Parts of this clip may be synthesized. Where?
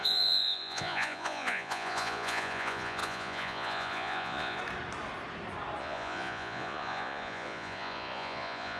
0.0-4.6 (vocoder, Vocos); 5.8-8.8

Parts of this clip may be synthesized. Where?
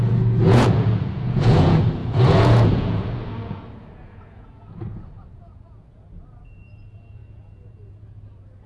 0.0-8.7 (vocoder, Vocos)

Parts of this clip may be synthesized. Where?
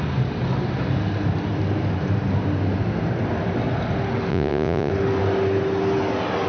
4.3-4.9 (vocoder, Vocos)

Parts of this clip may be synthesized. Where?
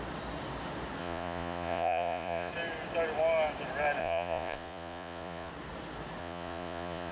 1.0-2.5 (vocoder, Vocos); 4.0-5.5; 6.2-7.1